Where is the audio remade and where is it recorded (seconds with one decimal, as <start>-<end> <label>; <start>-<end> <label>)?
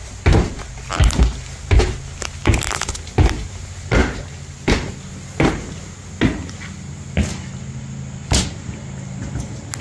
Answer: 0.0-9.8 recorded